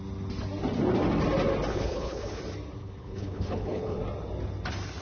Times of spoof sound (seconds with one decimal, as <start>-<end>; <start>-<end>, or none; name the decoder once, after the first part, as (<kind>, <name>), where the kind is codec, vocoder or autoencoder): 1.7-2.4 (codec, HILCodec); 2.8-4.0